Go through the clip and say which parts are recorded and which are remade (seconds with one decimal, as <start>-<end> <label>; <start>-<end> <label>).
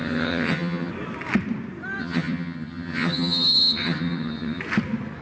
0.0-0.9 remade; 0.9-2.0 recorded; 2.0-4.6 remade; 4.6-5.2 recorded